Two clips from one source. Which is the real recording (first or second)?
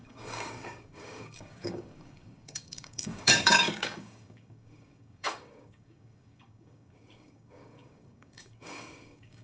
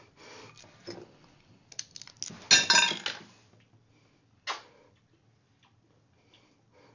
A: second